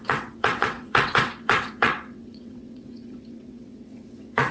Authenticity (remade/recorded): remade